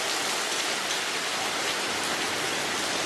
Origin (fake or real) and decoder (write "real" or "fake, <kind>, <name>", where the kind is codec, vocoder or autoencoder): fake, vocoder, BigVGAN v2